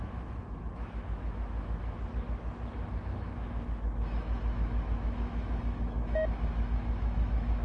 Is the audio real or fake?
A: fake